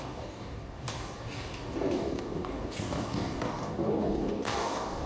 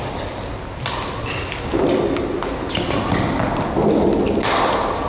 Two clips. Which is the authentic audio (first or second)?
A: second